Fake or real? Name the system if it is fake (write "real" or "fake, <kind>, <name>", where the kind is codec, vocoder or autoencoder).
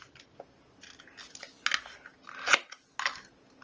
real